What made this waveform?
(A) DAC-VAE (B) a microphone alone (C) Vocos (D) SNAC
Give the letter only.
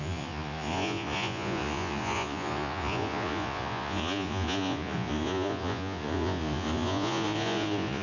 C